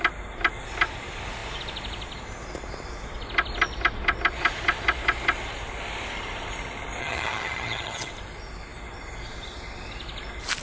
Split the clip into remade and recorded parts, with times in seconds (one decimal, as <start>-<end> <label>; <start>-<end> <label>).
0.0-7.0 recorded; 7.0-8.1 remade; 8.1-10.6 recorded